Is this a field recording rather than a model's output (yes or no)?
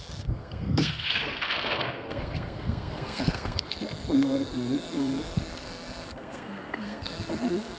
no